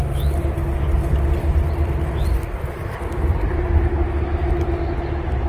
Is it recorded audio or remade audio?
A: recorded